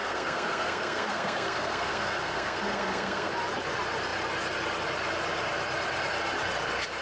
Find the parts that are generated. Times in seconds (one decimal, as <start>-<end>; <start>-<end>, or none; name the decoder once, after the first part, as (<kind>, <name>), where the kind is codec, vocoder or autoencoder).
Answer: 0.0-3.3 (codec, SNAC)